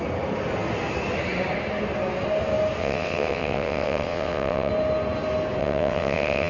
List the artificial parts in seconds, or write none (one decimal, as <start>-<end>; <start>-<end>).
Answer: 2.8-4.7; 5.6-6.5